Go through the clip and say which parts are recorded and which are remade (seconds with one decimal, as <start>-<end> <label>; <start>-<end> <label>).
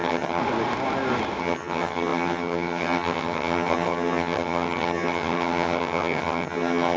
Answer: 0.0-0.4 remade; 0.4-1.4 recorded; 1.4-7.0 remade